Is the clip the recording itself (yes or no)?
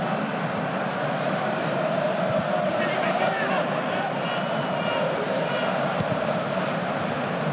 yes